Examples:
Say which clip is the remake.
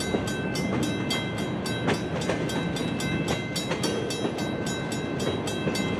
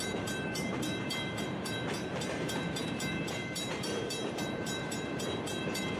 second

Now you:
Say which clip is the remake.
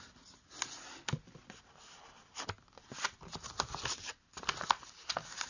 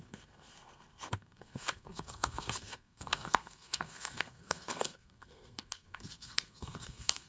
second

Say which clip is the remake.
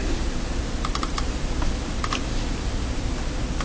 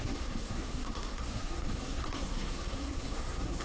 second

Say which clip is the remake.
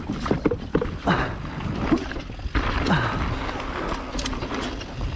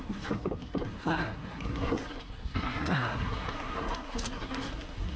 second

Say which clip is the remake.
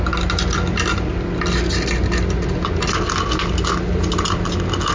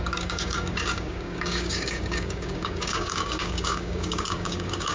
second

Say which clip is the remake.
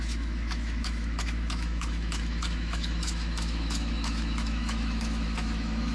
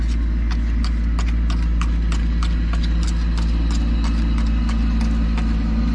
first